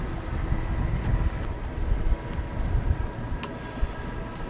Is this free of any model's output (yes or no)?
yes